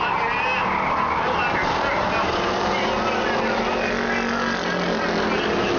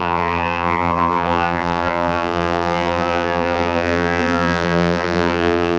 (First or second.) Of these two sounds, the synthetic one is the second